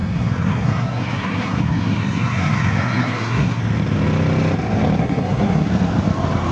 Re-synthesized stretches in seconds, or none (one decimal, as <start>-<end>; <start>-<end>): 0.0-3.6; 5.0-5.7